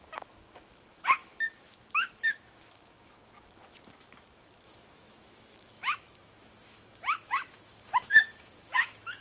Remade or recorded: remade